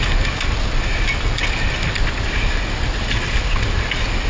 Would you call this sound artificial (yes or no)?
no